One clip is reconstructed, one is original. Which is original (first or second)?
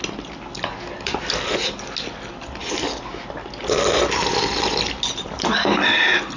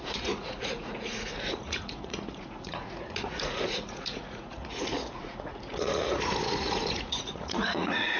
first